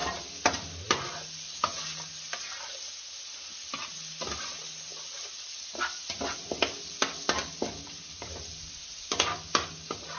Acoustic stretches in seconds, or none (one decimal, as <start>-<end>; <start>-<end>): 0.0-10.2